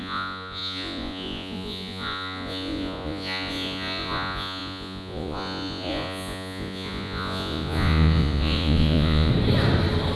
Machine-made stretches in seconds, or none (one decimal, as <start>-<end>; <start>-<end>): 0.0-9.3